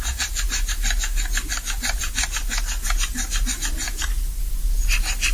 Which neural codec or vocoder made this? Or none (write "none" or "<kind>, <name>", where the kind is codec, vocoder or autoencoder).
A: none